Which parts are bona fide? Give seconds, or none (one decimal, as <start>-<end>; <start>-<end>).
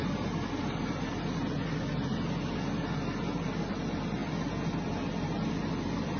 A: 0.0-6.2